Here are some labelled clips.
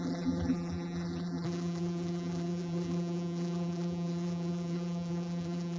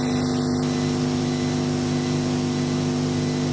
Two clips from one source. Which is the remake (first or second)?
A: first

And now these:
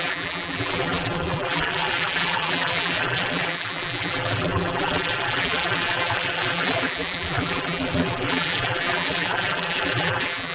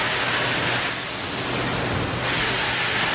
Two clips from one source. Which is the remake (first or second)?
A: first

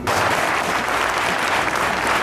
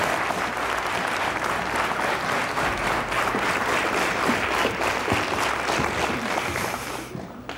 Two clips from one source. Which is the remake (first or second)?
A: first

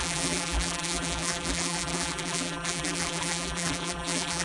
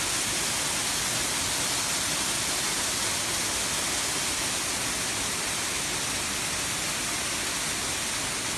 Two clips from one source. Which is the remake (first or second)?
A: first